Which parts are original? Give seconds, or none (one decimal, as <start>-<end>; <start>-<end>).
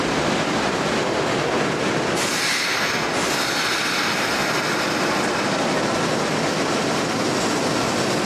0.0-8.2